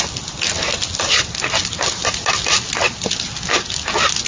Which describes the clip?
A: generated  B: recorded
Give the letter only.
B